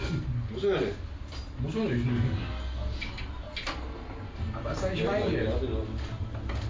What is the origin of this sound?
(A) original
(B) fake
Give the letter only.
A